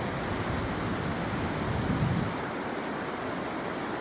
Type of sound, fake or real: real